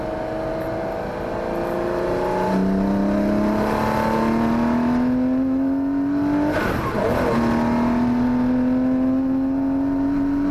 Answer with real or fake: real